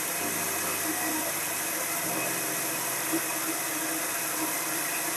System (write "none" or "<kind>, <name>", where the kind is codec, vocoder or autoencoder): none